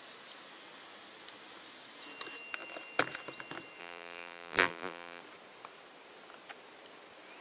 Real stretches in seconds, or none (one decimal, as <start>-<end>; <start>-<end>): 0.0-3.8; 5.2-7.4

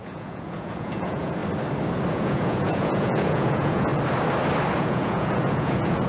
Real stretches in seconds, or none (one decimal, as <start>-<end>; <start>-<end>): 1.4-2.1; 3.9-4.8

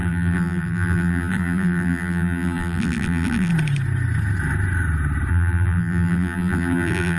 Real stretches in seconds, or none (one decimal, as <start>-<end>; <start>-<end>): 3.5-5.3

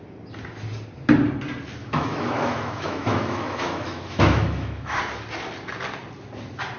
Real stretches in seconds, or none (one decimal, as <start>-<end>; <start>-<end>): 0.0-1.8; 5.0-6.8